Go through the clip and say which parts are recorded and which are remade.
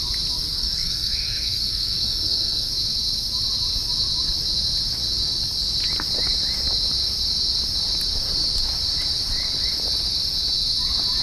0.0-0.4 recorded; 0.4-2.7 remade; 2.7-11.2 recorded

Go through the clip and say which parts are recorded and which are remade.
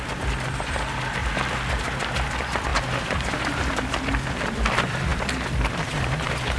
0.0-1.2 remade; 1.2-2.0 recorded; 2.0-6.6 remade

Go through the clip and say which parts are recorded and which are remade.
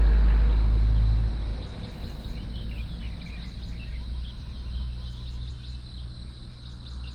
0.0-7.1 recorded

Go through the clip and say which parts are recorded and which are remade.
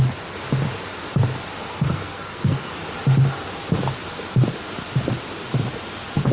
0.0-1.7 recorded; 1.7-2.7 remade; 2.7-6.3 recorded